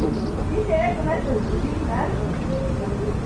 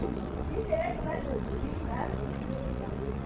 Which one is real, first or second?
first